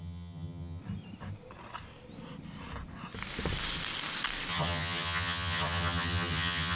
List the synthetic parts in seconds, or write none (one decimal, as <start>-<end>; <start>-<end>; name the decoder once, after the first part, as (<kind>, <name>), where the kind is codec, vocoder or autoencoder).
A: 0.0-0.8 (vocoder, HiFi-GAN); 4.5-6.8